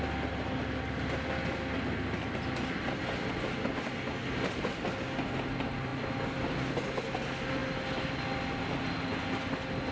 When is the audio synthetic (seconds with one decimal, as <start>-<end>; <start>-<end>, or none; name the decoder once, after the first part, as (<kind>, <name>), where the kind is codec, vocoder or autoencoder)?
none